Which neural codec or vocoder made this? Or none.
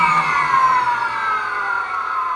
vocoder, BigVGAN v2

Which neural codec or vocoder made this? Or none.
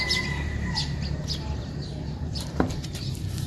vocoder, BigVGAN v2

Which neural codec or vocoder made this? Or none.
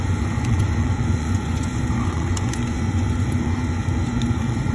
vocoder, Vocos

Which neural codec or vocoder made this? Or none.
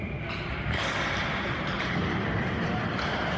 none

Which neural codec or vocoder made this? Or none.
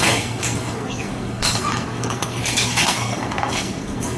codec, SNAC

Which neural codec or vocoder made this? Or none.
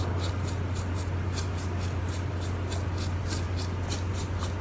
none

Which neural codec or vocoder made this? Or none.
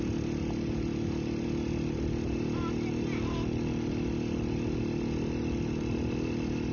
none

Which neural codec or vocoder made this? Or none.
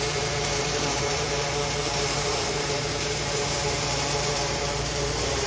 vocoder, BigVGAN v2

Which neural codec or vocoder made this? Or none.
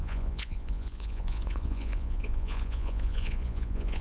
vocoder, Vocos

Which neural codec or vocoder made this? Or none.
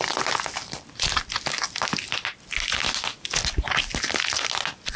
none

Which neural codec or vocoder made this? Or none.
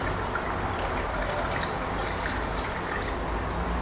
none